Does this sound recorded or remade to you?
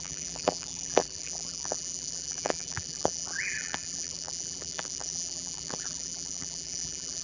remade